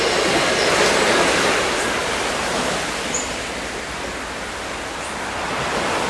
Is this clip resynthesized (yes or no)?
no